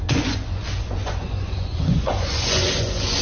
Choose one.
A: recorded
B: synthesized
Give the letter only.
B